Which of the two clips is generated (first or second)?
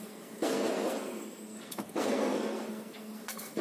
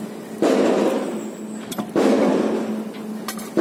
first